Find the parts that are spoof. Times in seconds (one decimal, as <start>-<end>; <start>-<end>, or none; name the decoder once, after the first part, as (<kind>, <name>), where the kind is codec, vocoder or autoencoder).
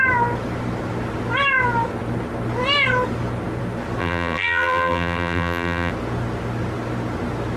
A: 4.0-5.9 (vocoder, BigVGAN v2)